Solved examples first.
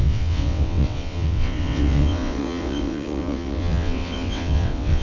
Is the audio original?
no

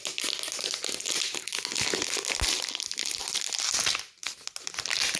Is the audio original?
yes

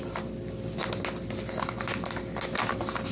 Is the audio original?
yes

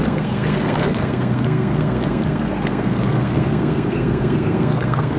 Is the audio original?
no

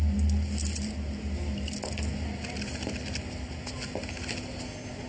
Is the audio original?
yes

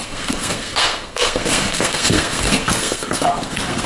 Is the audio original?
no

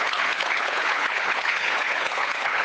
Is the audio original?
no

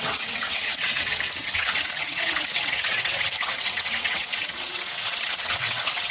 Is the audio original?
no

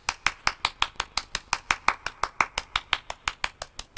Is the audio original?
yes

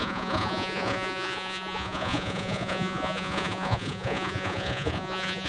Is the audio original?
no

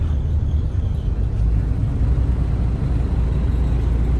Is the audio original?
yes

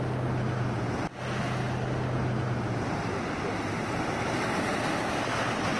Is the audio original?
yes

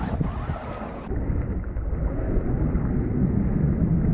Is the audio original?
yes